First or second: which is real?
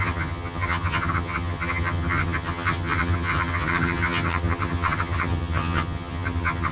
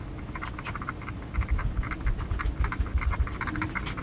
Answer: second